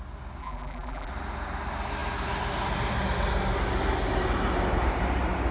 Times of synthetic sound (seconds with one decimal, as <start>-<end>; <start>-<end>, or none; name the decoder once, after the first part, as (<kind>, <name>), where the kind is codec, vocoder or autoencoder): 0.4-1.1 (vocoder, BigVGAN v2)